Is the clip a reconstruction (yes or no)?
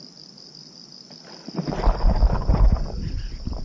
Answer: no